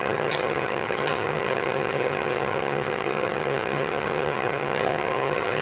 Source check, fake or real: fake